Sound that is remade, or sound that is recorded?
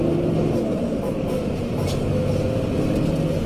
recorded